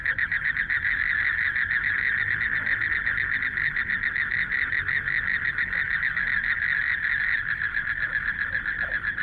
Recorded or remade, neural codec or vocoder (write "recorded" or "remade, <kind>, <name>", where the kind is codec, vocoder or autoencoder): recorded